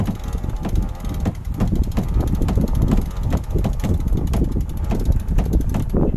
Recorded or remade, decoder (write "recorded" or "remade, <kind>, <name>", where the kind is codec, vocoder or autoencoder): recorded